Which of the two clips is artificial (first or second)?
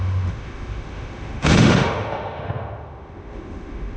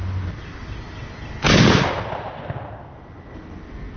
first